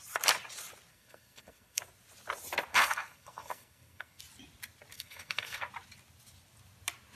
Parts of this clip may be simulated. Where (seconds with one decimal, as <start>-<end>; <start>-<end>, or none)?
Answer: 0.9-1.8; 2.7-4.2; 4.9-5.7